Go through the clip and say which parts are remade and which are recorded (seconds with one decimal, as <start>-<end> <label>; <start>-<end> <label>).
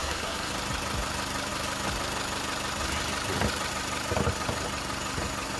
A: 0.0-0.5 remade; 0.5-5.6 recorded